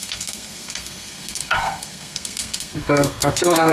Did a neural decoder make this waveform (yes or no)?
yes